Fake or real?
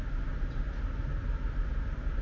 real